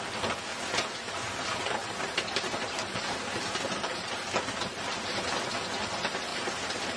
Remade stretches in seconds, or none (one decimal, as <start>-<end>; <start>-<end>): 0.5-1.1; 1.8-5.5; 6.3-7.0